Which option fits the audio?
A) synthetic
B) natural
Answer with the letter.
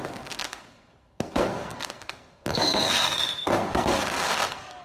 A